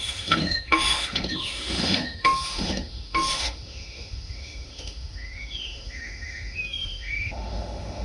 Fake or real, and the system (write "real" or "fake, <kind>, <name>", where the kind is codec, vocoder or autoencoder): fake, autoencoder, DAC-VAE